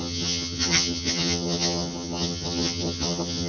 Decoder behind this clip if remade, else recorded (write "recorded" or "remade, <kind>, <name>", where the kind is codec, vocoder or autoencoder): remade, vocoder, HiFi-GAN